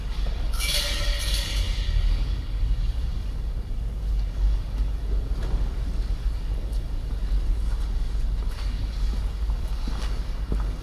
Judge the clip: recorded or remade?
remade